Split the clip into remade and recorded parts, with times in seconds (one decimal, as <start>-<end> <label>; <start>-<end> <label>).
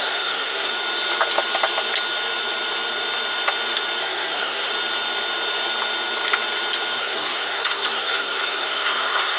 0.0-0.7 remade; 0.7-4.0 recorded; 4.0-4.7 remade; 4.7-7.0 recorded; 7.0-9.4 remade